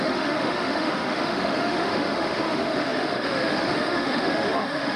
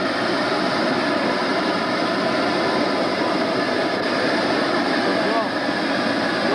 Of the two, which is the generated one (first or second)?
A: first